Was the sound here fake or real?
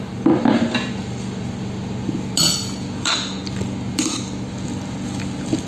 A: real